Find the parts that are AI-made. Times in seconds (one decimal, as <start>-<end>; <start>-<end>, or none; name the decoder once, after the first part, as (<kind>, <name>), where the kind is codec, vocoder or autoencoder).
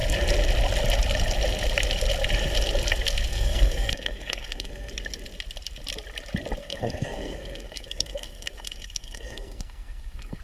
3.3-4.9 (codec, SNAC); 6.6-10.4